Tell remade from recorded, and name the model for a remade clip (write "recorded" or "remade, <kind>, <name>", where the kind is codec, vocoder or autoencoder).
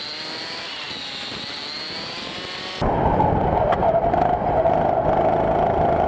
recorded